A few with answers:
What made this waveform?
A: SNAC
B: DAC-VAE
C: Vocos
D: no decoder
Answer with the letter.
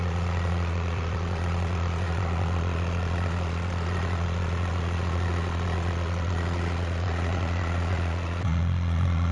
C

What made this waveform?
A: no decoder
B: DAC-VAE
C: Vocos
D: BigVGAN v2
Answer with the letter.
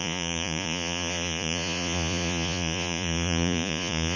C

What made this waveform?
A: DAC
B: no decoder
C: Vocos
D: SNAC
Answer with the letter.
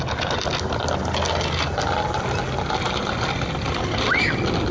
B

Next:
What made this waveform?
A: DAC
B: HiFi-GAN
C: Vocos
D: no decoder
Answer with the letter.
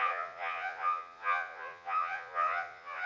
C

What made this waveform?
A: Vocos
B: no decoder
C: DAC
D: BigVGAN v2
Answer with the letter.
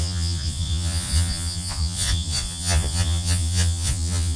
A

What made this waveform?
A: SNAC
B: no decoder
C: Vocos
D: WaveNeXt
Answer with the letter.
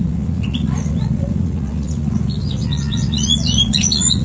C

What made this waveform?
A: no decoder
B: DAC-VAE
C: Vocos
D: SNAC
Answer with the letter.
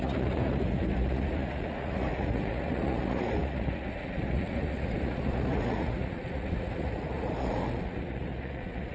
C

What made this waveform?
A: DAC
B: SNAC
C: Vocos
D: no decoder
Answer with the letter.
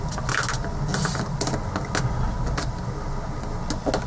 D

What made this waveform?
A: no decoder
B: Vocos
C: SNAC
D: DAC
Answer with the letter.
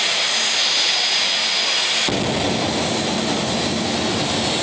A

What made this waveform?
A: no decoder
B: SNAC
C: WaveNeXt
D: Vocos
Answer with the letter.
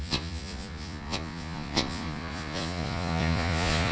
D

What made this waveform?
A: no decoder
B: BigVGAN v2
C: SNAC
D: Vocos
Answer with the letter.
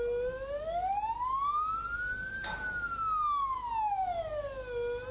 A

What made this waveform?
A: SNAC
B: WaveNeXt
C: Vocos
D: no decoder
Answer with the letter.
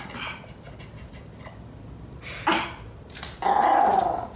D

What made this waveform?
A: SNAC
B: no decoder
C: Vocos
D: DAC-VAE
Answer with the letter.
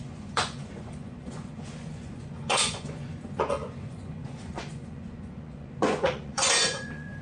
C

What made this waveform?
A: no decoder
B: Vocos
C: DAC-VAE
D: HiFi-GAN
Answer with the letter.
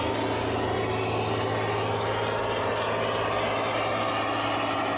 A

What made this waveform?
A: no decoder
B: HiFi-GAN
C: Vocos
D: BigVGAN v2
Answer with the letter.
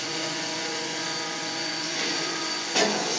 C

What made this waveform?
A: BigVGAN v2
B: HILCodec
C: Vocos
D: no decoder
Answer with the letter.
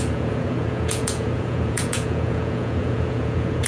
C